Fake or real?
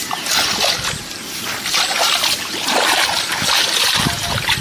real